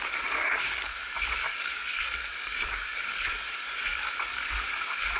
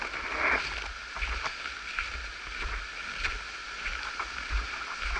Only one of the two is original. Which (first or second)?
second